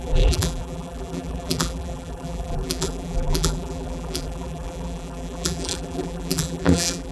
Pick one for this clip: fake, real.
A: fake